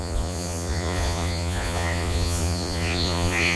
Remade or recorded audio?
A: remade